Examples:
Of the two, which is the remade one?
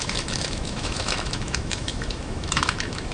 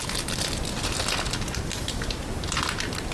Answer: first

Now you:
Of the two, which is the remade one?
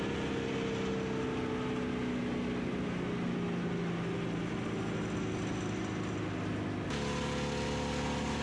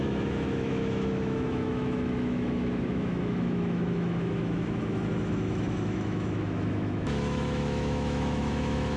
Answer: second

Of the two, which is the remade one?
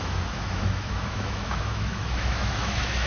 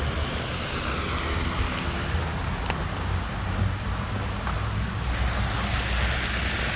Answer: first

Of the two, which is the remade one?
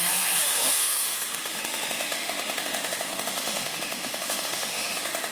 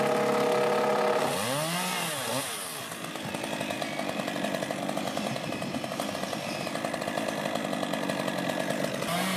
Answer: first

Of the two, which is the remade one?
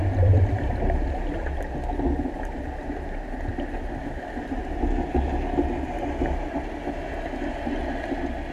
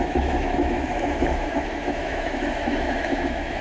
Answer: second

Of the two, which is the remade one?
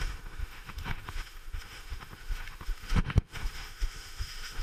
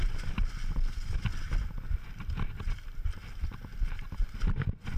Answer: first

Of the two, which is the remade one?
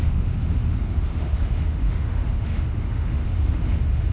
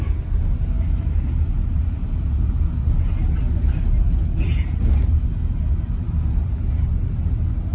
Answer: first